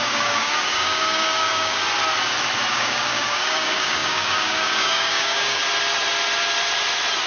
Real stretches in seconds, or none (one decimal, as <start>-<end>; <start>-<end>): 1.8-2.7; 5.6-7.3